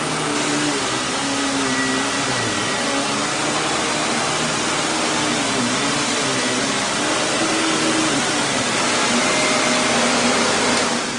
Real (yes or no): yes